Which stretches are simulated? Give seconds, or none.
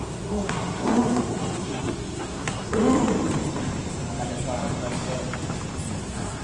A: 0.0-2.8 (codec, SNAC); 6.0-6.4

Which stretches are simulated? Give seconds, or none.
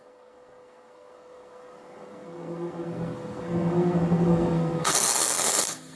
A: 0.0-6.0 (codec, SNAC)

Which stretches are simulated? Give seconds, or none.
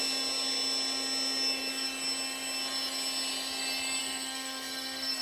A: 4.0-5.2 (codec, SNAC)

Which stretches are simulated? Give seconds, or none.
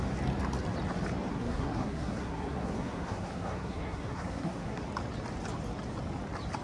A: 1.3-4.8 (codec, SNAC)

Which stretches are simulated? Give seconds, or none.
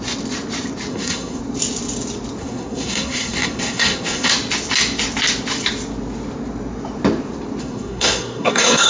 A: 0.9-1.4 (codec, SNAC); 2.4-4.3; 7.6-8.9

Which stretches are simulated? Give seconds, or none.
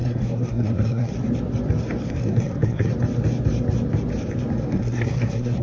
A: 0.0-1.1 (codec, SNAC); 2.1-2.9; 4.7-5.6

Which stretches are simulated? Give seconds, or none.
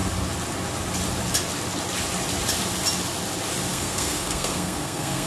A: 3.7-5.3 (codec, SNAC)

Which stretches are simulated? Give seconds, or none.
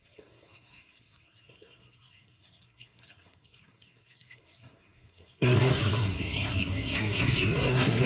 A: 0.0-8.1 (codec, SNAC)